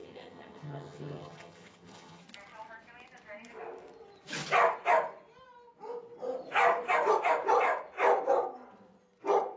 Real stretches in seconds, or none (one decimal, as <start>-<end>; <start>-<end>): 2.2-9.6